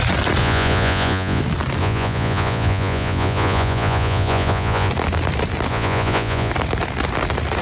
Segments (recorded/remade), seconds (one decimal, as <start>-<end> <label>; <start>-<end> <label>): 0.0-0.4 recorded; 0.4-1.4 remade; 1.4-1.8 recorded; 1.8-4.9 remade; 4.9-5.7 recorded; 5.7-6.5 remade; 6.5-7.6 recorded